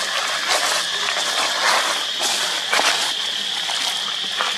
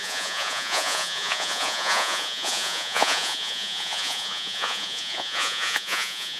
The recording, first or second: first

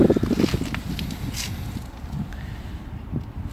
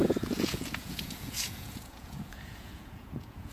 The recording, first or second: first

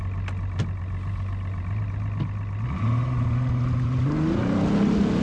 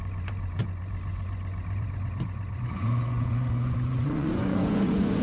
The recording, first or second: first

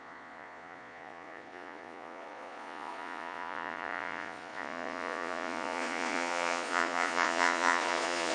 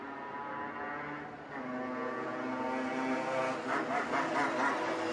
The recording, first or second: second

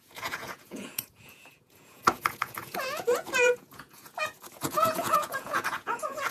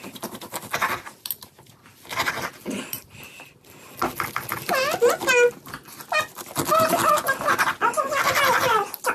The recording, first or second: second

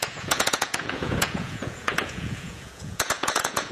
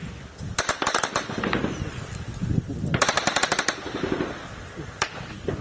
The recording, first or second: second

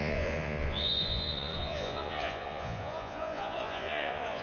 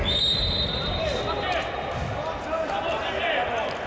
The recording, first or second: second